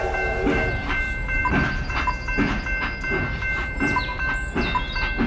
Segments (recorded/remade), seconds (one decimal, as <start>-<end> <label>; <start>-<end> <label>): 0.0-1.4 remade; 1.4-3.0 recorded; 3.0-4.1 remade; 4.1-5.3 recorded